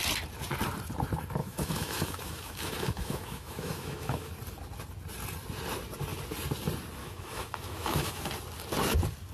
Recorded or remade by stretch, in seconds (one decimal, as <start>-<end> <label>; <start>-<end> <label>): 0.0-1.4 recorded; 1.4-4.3 remade; 4.3-7.0 recorded; 7.0-8.3 remade; 8.3-9.3 recorded